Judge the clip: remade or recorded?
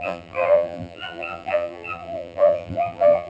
remade